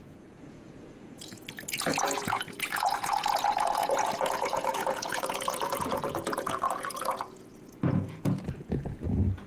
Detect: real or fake fake